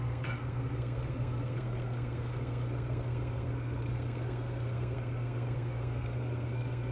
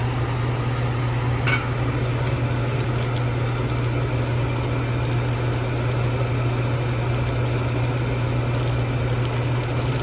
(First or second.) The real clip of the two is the second